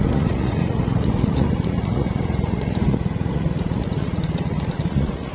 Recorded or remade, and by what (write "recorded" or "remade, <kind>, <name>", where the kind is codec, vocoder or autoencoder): remade, vocoder, Vocos